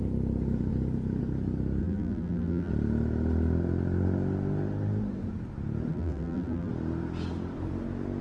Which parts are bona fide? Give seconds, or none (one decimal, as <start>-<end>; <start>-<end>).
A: 0.0-1.8; 2.7-5.9; 6.7-8.2